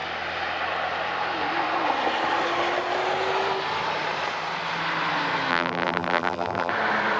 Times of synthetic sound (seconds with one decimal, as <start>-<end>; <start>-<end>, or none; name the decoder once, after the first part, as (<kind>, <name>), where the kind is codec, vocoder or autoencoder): 5.5-6.7 (vocoder, BigVGAN v2)

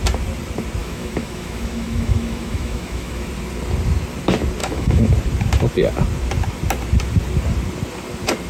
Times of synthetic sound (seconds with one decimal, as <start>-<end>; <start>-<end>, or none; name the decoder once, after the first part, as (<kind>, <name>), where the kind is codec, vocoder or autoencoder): 0.8-3.3 (autoencoder, DAC-VAE); 4.6-5.1